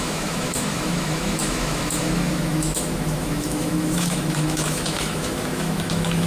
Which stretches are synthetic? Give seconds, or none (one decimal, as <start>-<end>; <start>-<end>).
0.0-6.3